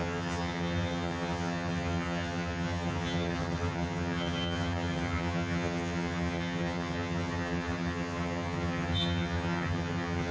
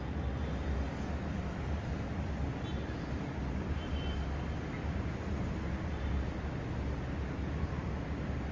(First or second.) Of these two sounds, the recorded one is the second